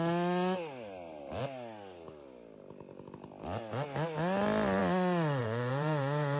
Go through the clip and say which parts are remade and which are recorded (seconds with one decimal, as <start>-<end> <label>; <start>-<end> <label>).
0.0-5.4 recorded; 5.4-6.4 remade